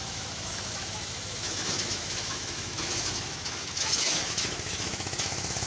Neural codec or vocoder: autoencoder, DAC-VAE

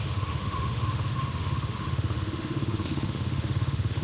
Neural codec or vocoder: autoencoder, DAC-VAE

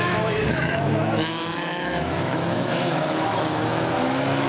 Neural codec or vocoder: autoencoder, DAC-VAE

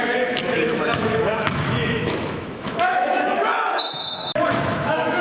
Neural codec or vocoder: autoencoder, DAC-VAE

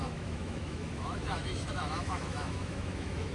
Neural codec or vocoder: autoencoder, DAC-VAE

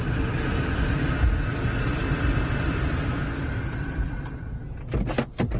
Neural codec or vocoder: none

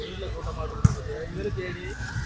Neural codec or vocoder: none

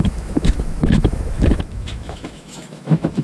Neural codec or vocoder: autoencoder, DAC-VAE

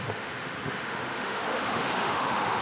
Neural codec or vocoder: autoencoder, DAC-VAE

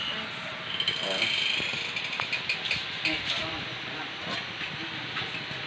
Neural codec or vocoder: none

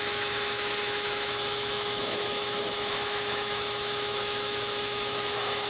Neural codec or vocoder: autoencoder, DAC-VAE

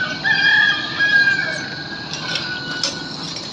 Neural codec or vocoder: none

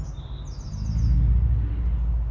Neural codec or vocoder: none